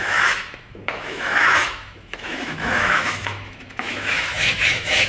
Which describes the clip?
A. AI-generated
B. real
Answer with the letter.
A